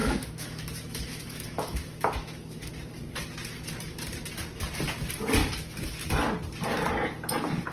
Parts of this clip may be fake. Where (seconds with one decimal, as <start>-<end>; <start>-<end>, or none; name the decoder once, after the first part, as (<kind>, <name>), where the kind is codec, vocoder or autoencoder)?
0.0-2.7 (autoencoder, DAC-VAE); 5.4-6.1